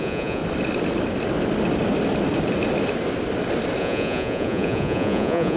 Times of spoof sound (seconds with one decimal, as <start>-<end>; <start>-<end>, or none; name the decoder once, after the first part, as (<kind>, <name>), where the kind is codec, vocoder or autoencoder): 0.0-0.4 (vocoder, Vocos); 3.8-5.6